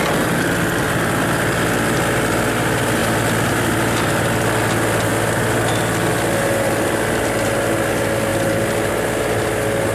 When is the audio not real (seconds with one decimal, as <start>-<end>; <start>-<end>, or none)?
none